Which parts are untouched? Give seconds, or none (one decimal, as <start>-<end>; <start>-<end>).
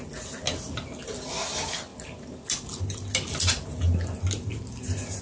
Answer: 0.0-5.2